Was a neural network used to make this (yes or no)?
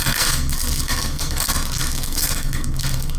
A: yes